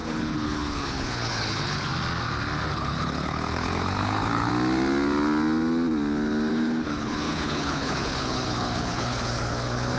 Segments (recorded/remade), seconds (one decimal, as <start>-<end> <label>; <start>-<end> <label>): 0.0-1.9 remade; 1.9-2.7 recorded; 2.7-4.5 remade; 4.5-6.5 recorded; 6.5-10.0 remade